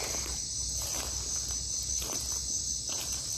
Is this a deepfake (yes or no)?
no